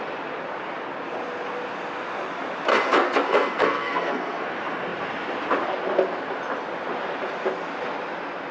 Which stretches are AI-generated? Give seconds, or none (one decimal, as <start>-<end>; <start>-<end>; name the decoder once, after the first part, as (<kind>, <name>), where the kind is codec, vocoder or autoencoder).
2.7-4.4 (codec, SNAC)